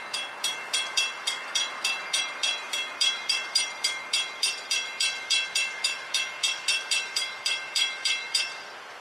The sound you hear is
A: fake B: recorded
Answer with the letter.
A